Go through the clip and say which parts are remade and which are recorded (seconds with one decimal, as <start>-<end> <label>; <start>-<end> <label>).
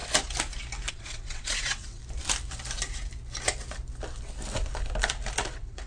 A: 0.0-0.9 recorded; 0.9-2.0 remade; 2.0-5.5 recorded; 5.5-5.9 remade